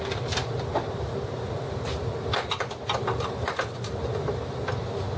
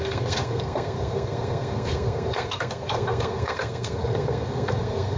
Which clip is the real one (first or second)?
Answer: first